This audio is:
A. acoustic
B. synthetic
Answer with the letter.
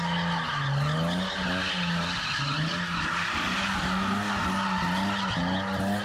A